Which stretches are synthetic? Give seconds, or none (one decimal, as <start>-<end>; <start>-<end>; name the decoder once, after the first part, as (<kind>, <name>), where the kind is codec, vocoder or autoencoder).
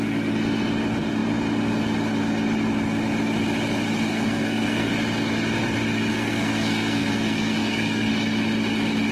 4.1-4.9 (codec, SNAC); 6.1-8.1